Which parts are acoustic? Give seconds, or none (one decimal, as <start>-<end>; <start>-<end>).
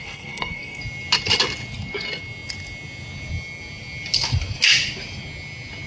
0.8-5.9